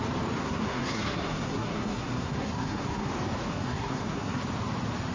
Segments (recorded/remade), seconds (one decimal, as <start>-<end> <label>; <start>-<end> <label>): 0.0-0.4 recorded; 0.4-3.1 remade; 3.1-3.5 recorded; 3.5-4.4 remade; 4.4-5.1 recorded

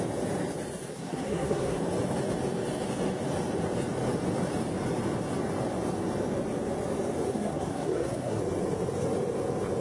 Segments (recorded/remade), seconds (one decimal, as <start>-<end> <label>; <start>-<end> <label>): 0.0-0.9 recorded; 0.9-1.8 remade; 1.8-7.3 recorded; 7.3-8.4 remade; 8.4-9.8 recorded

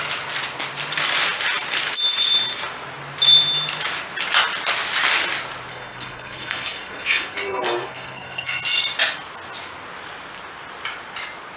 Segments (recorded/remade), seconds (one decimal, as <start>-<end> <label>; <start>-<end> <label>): 0.0-5.7 recorded; 5.7-8.6 remade; 8.6-11.6 recorded

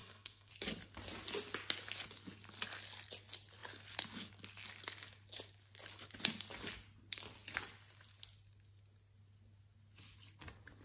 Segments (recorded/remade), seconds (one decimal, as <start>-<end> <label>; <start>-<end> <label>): 0.0-0.5 remade; 0.5-10.8 recorded